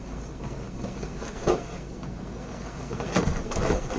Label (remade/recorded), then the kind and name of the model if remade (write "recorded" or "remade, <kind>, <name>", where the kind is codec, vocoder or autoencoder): remade, codec, SNAC